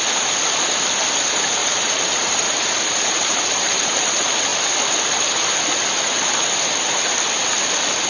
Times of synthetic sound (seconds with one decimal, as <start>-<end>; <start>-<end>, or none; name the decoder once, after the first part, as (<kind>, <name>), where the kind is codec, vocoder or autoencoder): 1.6-4.1 (vocoder, BigVGAN v2)